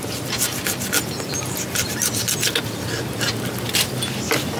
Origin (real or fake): real